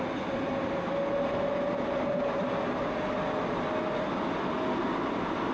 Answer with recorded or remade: recorded